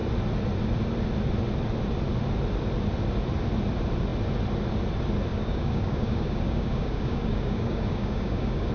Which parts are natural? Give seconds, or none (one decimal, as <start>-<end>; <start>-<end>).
0.0-5.3